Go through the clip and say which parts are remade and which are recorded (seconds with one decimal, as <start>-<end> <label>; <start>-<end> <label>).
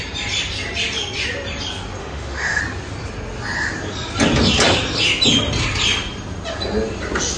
0.0-2.0 recorded; 2.0-2.6 remade; 2.6-7.4 recorded